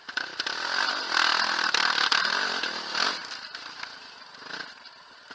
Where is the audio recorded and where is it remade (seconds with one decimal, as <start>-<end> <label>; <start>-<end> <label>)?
0.0-5.3 recorded